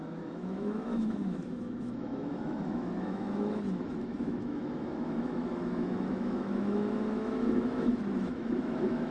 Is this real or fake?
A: fake